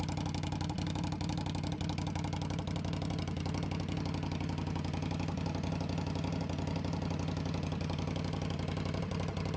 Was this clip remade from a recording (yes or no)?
no